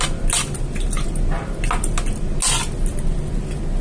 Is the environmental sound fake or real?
real